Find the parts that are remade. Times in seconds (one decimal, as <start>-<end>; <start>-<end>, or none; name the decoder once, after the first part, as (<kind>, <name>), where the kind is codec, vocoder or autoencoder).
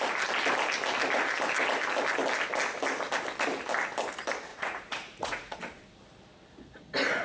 4.5-5.6 (vocoder, Vocos)